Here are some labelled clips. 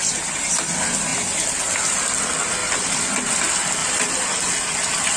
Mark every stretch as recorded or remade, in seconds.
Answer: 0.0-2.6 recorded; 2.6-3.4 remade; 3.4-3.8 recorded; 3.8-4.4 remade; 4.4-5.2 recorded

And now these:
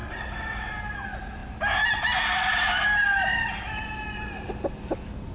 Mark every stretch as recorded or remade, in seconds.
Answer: 0.0-0.8 remade; 0.8-5.3 recorded

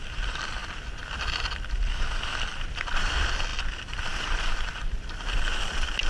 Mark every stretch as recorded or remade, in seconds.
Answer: 0.0-0.6 remade; 0.6-2.3 recorded; 2.3-6.1 remade

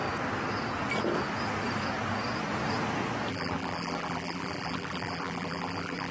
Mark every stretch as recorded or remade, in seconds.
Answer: 0.0-3.3 recorded; 3.3-6.1 remade

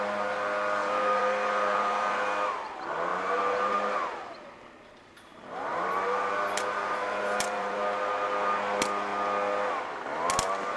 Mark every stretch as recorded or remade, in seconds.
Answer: 0.0-0.8 recorded; 0.8-2.2 remade; 2.2-3.1 recorded; 3.1-4.2 remade; 4.2-5.3 recorded; 5.3-7.8 remade; 7.8-10.8 recorded

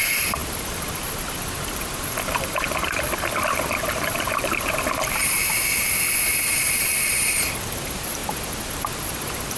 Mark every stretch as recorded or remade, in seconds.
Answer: 0.0-5.2 remade; 5.2-6.6 recorded; 6.6-8.2 remade; 8.2-9.0 recorded; 9.0-9.6 remade

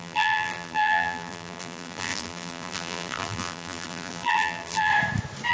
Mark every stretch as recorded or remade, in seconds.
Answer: 0.0-4.9 remade; 4.9-5.5 recorded

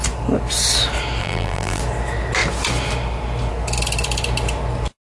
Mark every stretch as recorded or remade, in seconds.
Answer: 0.0-1.2 recorded; 1.2-1.8 remade; 1.8-5.2 recorded